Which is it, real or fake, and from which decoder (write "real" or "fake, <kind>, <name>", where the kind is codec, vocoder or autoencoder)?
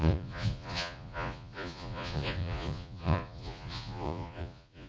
fake, vocoder, Vocos